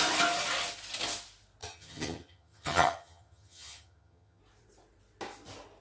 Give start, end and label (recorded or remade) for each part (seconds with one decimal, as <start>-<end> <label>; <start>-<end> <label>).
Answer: 0.0-1.6 recorded; 1.6-4.4 remade; 4.4-5.8 recorded